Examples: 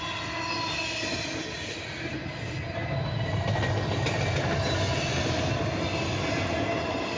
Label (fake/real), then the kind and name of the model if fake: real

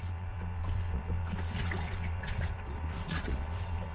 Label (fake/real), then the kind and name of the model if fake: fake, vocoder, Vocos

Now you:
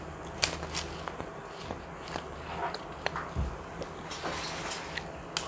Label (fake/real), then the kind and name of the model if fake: real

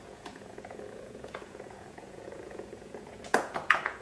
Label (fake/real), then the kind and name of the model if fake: fake, vocoder, Vocos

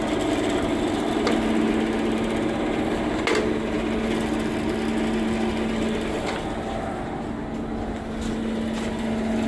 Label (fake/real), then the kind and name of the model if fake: real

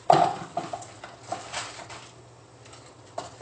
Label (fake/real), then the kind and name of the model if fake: real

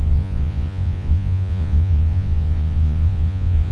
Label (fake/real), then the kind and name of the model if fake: fake, vocoder, Vocos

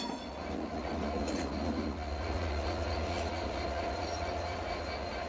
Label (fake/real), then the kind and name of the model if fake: fake, vocoder, Vocos